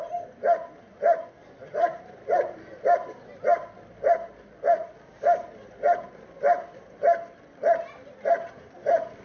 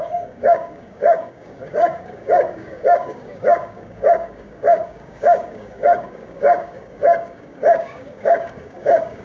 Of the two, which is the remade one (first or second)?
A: second